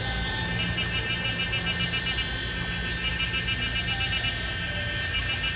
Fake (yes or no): no